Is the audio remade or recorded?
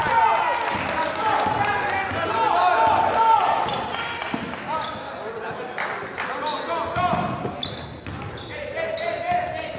recorded